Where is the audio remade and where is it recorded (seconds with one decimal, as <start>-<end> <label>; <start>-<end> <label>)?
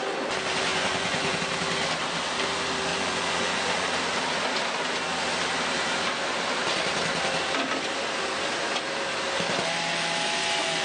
0.0-0.7 recorded; 0.7-1.4 remade; 1.4-2.9 recorded; 2.9-3.9 remade; 3.9-10.8 recorded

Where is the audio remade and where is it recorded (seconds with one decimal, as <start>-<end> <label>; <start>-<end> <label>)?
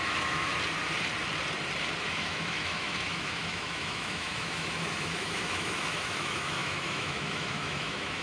0.0-0.5 remade; 0.5-2.1 recorded; 2.1-8.2 remade